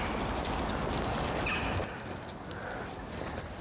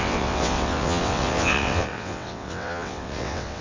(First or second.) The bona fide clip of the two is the first